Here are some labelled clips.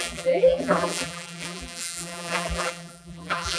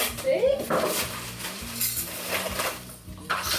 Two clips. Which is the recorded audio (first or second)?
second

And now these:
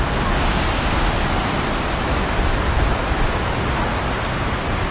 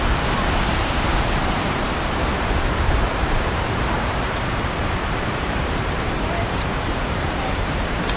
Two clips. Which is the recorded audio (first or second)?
first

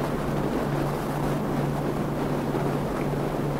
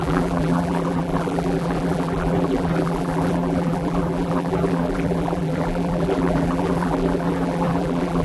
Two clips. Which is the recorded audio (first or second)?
first